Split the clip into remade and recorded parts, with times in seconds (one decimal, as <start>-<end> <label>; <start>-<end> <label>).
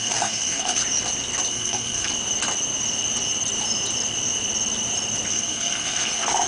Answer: 0.0-0.8 remade; 0.8-1.5 recorded; 1.5-2.1 remade; 2.1-5.3 recorded; 5.3-6.5 remade